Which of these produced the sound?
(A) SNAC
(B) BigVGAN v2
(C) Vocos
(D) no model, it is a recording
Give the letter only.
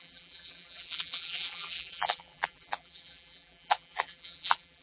B